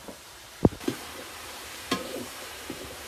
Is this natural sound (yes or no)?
no